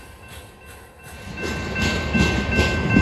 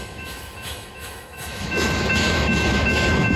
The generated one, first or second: second